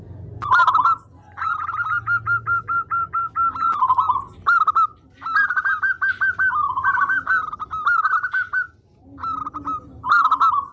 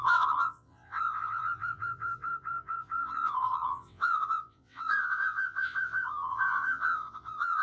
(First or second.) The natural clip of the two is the first